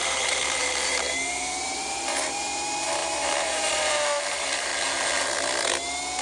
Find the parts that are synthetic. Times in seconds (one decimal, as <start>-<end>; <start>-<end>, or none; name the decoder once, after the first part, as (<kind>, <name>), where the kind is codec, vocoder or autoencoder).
0.0-4.7 (vocoder, BigVGAN v2)